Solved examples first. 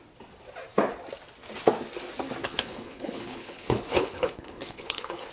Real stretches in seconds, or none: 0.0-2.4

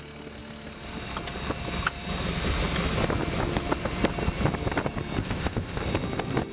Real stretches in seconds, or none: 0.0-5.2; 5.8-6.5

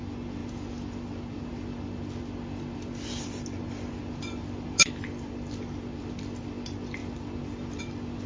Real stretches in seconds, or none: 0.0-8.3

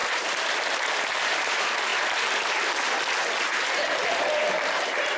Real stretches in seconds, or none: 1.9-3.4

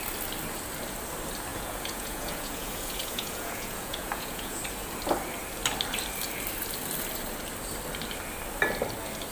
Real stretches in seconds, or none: 0.0-1.5; 4.6-9.3

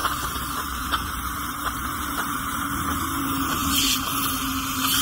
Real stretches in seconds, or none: 3.0-5.0